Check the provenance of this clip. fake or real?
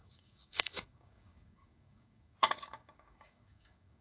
fake